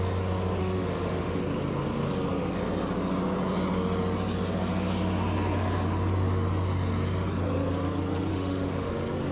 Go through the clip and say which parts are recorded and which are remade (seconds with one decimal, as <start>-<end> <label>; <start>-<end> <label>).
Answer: 0.0-0.6 recorded; 0.6-1.4 remade; 1.4-8.3 recorded; 8.3-8.9 remade; 8.9-9.3 recorded